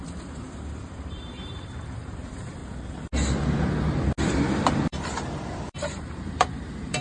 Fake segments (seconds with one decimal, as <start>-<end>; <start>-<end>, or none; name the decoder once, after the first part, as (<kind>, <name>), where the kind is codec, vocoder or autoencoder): 0.0-2.6 (vocoder, BigVGAN v2); 4.5-7.0